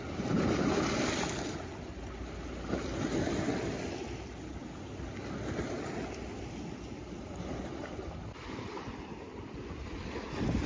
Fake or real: real